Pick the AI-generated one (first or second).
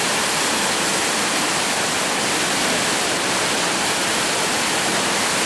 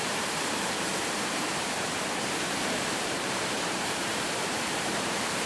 second